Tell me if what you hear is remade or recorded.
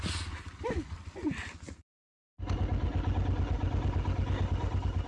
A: recorded